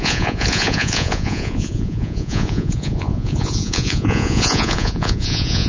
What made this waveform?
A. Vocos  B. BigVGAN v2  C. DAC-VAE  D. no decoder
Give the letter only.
A